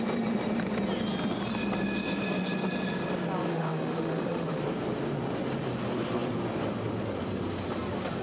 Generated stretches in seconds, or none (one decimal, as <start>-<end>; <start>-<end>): 3.5-4.6

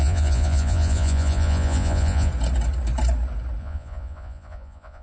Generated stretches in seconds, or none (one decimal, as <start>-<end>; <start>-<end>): 0.0-2.3; 3.6-5.0